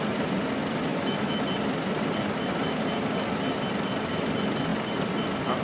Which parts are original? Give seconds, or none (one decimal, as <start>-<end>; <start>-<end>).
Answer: 0.0-0.9; 1.4-5.6